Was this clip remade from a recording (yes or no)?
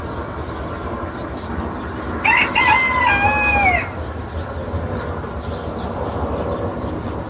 no